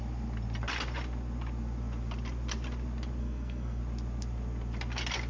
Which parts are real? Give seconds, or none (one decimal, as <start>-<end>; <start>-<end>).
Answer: 0.0-3.2; 3.8-5.3